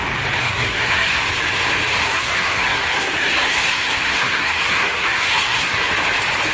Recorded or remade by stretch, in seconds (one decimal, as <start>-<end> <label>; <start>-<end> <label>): 0.0-0.4 recorded; 0.4-1.2 remade; 1.2-2.0 recorded; 2.0-5.9 remade; 5.9-6.5 recorded